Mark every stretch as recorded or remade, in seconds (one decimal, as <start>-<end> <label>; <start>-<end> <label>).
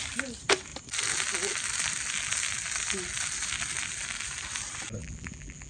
0.0-5.0 recorded; 5.0-5.7 remade